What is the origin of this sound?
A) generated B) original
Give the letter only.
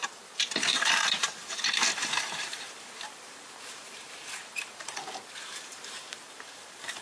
A